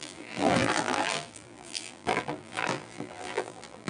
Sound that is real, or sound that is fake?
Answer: fake